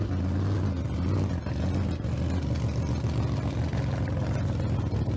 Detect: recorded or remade recorded